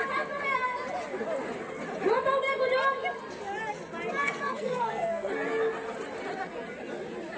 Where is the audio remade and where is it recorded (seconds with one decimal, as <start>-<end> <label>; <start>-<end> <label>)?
0.0-4.2 recorded; 4.2-5.3 remade; 5.3-7.4 recorded